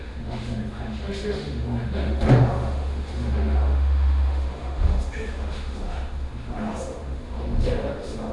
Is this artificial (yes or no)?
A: yes